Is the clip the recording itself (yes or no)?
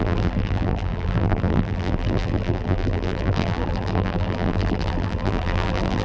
no